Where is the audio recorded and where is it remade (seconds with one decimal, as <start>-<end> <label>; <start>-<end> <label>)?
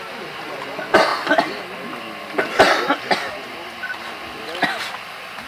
0.0-5.5 recorded